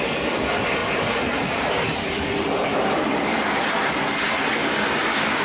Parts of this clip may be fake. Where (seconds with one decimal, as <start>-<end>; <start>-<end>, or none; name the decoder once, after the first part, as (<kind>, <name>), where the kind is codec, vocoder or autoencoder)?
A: 0.8-4.0 (vocoder, BigVGAN v2)